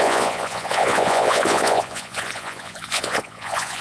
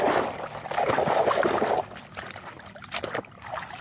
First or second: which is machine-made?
first